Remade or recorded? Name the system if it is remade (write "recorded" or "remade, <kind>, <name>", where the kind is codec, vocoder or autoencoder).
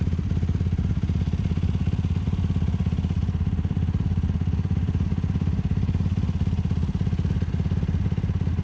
recorded